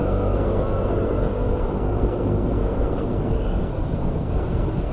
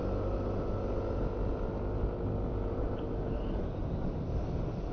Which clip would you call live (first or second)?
second